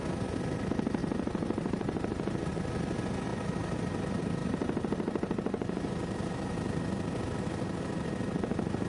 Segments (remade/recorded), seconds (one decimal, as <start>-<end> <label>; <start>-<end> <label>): 0.0-1.0 recorded; 1.0-2.5 remade; 2.5-3.3 recorded; 3.3-4.0 remade; 4.0-4.4 recorded; 4.4-6.6 remade; 6.6-8.9 recorded